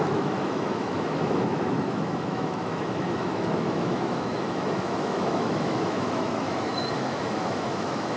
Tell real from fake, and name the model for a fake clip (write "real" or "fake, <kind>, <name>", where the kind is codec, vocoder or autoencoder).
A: fake, autoencoder, DAC-VAE